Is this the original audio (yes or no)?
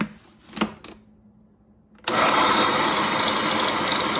yes